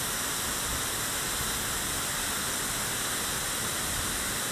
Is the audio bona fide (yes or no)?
yes